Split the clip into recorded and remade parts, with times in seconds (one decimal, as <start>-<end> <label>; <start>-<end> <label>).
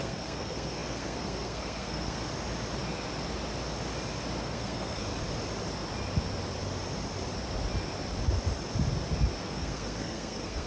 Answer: 0.0-2.3 remade; 2.3-4.4 recorded; 4.4-5.1 remade; 5.1-9.4 recorded; 9.4-10.7 remade